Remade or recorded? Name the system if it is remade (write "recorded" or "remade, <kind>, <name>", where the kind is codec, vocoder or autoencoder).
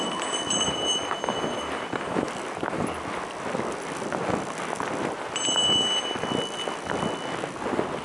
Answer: recorded